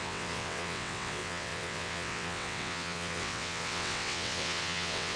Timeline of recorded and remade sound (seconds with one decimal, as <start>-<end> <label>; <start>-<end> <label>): 0.0-5.2 remade